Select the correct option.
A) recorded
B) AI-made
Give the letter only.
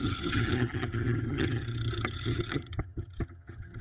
B